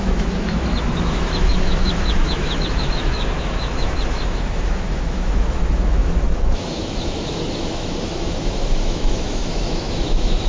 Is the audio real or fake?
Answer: fake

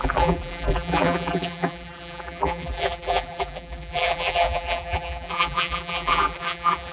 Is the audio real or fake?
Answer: fake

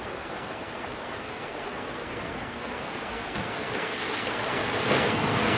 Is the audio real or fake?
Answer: fake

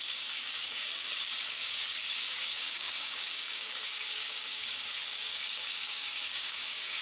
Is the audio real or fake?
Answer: fake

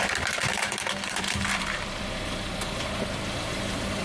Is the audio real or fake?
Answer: fake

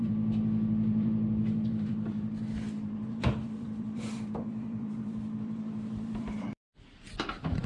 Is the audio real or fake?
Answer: fake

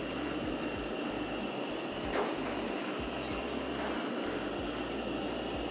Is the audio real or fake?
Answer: real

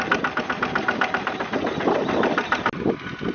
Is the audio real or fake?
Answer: real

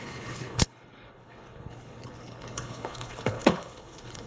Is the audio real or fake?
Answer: fake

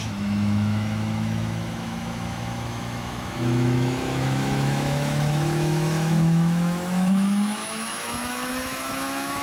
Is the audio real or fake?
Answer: fake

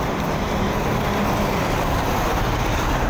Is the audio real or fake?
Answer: fake